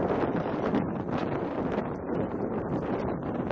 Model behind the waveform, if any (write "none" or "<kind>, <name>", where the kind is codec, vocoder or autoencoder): vocoder, BigVGAN v2